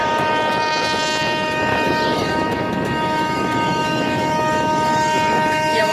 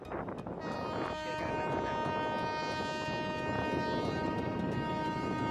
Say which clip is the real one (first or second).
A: second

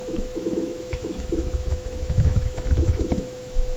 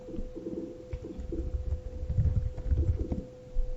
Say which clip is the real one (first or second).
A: second